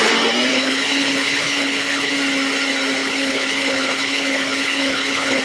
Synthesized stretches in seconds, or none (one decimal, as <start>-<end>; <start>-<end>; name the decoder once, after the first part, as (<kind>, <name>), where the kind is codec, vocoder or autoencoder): 0.5-2.1 (codec, HILCodec); 3.0-5.4